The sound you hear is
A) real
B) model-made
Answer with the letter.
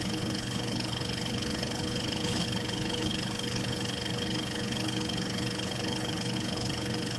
B